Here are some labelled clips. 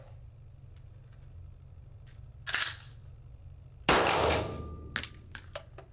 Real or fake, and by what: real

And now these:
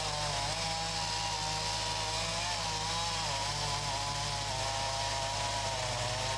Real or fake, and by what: real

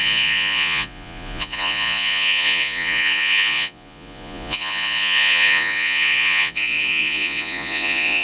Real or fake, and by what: fake, vocoder, Vocos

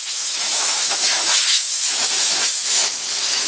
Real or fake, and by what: fake, autoencoder, DAC-VAE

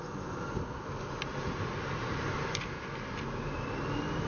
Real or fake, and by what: real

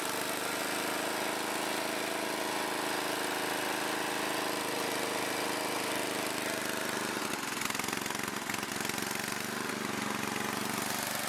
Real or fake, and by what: real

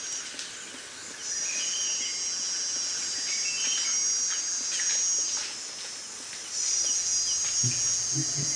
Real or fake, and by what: real